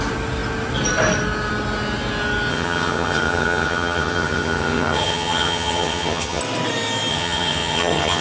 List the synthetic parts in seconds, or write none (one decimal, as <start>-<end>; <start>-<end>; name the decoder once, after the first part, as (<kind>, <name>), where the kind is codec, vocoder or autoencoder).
2.5-6.4 (vocoder, HiFi-GAN); 7.1-8.2